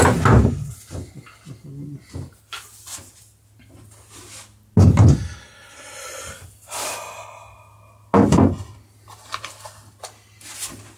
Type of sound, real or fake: real